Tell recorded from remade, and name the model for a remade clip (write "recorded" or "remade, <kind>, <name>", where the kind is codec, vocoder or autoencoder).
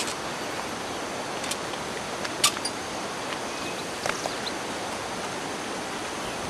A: recorded